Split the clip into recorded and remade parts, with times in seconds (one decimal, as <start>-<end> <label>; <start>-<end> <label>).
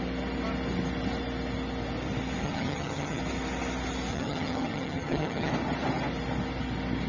0.0-2.4 recorded; 2.4-3.2 remade; 3.2-4.1 recorded; 4.1-5.5 remade; 5.5-7.1 recorded